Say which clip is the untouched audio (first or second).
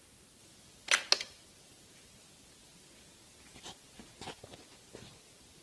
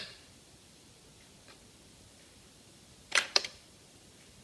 first